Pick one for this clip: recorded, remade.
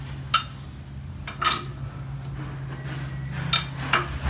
recorded